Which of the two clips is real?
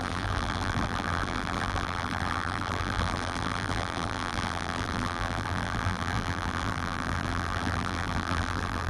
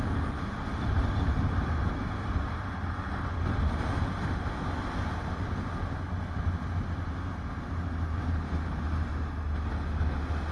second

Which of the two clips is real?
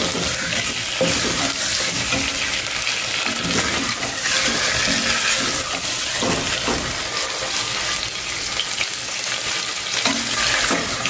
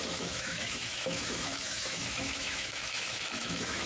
first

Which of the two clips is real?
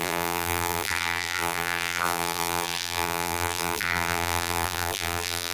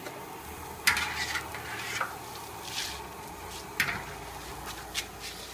second